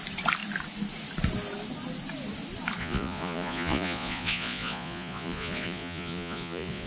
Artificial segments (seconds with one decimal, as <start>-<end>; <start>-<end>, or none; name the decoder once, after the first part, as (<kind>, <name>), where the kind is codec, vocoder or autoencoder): 2.8-6.9 (vocoder, Vocos)